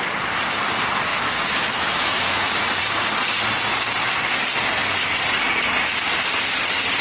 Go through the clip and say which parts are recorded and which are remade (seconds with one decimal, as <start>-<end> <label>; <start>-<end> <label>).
0.0-1.1 recorded; 1.1-2.8 remade; 2.8-7.0 recorded